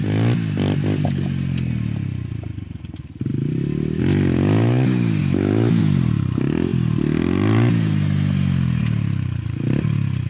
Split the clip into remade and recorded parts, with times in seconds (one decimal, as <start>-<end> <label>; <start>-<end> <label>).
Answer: 0.0-5.2 recorded; 5.2-5.8 remade; 5.8-10.3 recorded

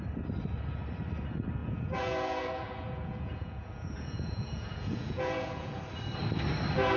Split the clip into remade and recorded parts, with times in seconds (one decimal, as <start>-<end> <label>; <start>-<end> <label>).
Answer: 0.0-1.6 recorded; 1.6-5.8 remade; 5.8-7.0 recorded

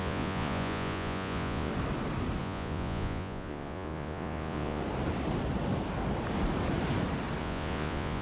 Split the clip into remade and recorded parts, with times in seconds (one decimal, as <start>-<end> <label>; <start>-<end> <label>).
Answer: 0.0-1.7 remade; 1.7-2.4 recorded; 2.4-4.8 remade; 4.8-7.4 recorded; 7.4-8.2 remade

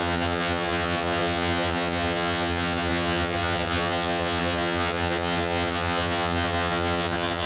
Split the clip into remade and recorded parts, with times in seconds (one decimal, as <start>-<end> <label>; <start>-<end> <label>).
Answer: 0.0-7.5 remade

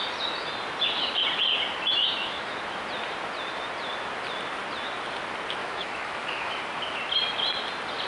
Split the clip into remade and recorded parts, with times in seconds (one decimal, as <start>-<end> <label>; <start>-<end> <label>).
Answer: 0.0-2.0 recorded; 2.0-2.6 remade; 2.6-5.6 recorded; 5.6-6.6 remade; 6.6-8.1 recorded